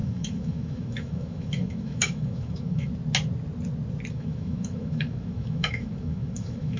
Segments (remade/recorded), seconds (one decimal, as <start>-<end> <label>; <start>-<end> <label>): 0.0-2.9 remade; 2.9-4.1 recorded; 4.1-6.8 remade